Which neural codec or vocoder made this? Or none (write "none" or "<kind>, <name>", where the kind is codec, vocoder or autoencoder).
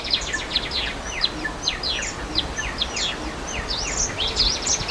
none